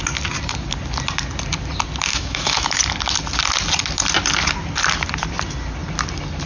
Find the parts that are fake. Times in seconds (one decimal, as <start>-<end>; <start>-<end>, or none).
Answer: 2.1-2.8